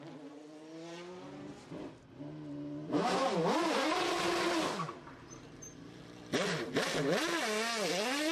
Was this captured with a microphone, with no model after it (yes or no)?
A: yes